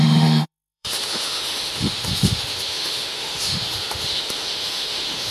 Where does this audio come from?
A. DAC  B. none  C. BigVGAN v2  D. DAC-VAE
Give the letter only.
D